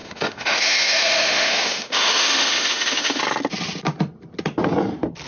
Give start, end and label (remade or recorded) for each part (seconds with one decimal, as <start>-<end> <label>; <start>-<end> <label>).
0.0-3.2 remade; 3.2-5.3 recorded